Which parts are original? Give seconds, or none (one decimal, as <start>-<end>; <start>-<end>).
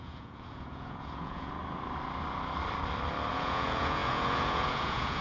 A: 1.6-3.3